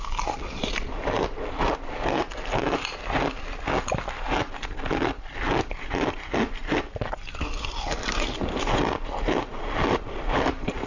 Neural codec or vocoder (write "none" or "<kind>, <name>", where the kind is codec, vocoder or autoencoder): none